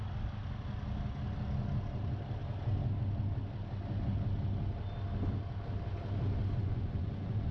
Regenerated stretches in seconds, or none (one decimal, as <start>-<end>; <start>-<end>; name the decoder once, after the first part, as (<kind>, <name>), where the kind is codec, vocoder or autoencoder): 6.6-7.5 (vocoder, Vocos)